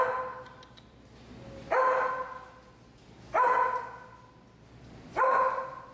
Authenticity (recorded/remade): recorded